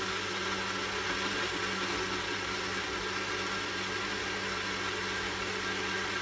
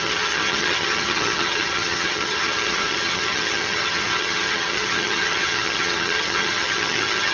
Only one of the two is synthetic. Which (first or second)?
second